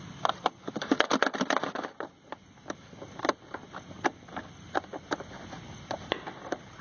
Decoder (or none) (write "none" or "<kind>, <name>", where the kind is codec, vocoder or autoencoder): none